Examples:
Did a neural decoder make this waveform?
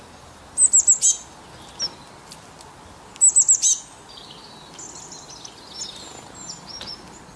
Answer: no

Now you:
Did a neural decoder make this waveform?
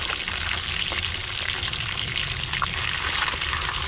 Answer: no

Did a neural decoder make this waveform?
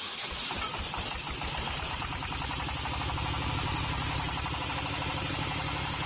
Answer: no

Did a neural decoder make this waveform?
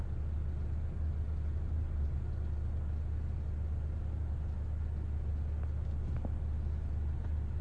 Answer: no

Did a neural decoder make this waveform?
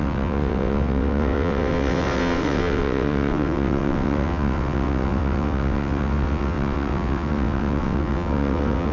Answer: yes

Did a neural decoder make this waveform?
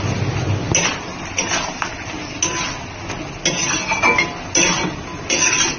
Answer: no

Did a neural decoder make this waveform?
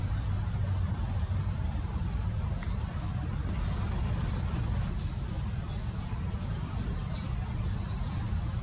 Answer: no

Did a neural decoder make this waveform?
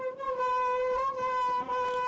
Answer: no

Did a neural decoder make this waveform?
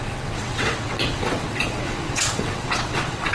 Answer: yes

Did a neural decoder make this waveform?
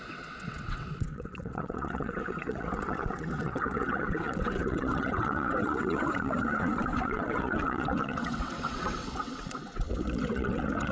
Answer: yes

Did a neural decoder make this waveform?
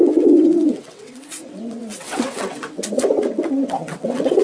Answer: yes